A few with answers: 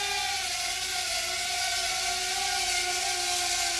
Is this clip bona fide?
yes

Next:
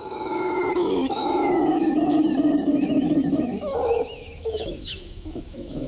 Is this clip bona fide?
no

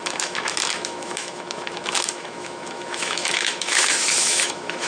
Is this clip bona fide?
no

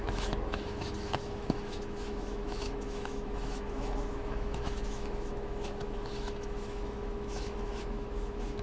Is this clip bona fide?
no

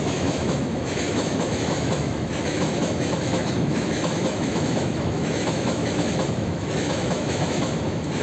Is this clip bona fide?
no